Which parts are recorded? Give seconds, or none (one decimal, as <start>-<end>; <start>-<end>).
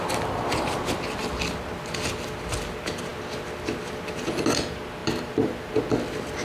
0.0-5.0; 5.7-6.4